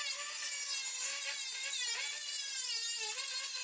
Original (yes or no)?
yes